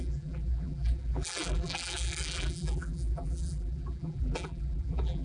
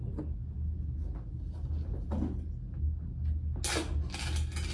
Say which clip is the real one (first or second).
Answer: second